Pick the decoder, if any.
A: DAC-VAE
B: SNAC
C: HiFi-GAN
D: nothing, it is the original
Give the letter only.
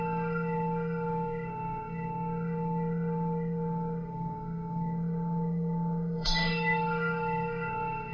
A